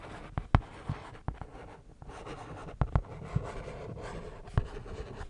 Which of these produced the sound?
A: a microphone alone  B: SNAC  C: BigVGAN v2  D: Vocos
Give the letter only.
A